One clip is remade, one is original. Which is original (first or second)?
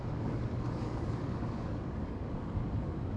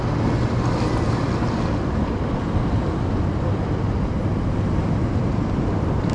second